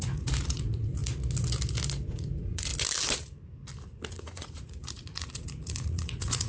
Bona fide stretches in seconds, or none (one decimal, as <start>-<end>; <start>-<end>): 1.0-2.1; 2.7-4.1